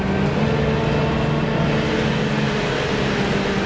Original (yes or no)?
yes